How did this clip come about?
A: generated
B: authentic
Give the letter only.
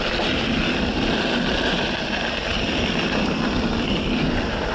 B